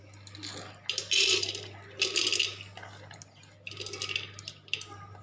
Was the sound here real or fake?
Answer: real